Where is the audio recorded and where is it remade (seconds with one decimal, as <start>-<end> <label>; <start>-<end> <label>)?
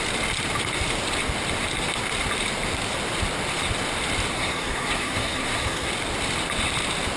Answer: 0.0-4.3 recorded; 4.3-5.9 remade; 5.9-7.2 recorded